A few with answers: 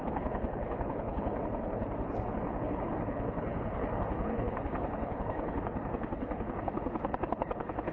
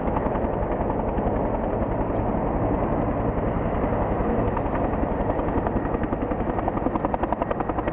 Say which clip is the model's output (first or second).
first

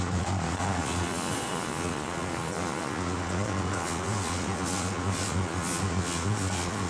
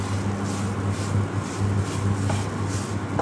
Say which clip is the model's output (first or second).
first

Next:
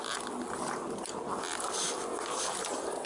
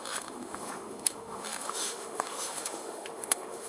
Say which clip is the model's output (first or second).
second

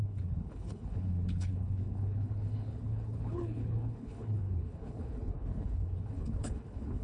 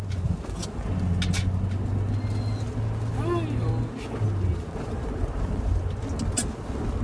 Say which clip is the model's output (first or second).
first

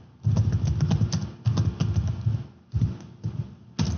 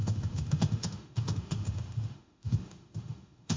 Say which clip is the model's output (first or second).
second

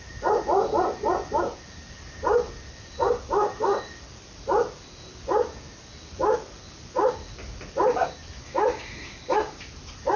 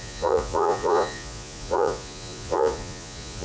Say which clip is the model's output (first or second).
second